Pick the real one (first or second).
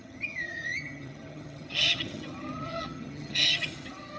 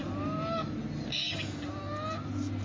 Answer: second